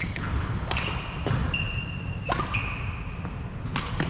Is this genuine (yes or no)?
yes